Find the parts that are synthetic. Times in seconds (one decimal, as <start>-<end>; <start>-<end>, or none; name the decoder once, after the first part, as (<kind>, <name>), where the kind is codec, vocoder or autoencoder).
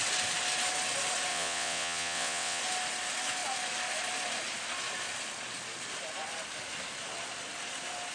1.3-2.6 (vocoder, WaveNeXt)